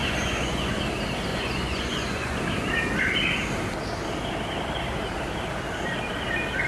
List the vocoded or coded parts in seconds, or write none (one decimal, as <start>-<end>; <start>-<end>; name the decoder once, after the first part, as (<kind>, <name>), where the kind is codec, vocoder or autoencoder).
0.0-0.8 (vocoder, Vocos); 1.3-2.4